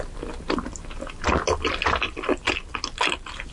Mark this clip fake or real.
real